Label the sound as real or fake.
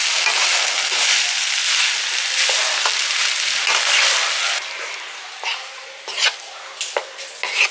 real